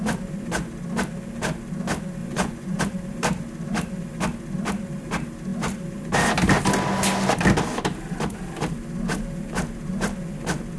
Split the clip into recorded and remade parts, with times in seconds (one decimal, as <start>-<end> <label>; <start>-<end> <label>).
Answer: 0.0-2.2 recorded; 2.2-2.8 remade; 2.8-10.8 recorded